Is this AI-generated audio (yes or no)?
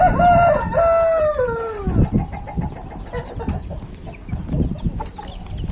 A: no